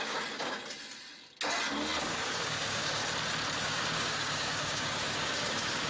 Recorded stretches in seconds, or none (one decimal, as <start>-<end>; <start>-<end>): 0.6-2.0; 3.0-3.6